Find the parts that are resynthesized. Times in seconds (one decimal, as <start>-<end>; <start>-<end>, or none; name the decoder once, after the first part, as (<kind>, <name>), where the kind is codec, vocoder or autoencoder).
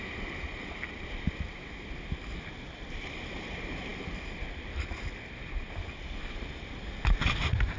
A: 3.9-4.9 (vocoder, BigVGAN v2)